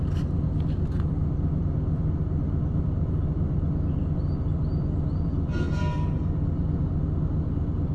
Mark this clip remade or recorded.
recorded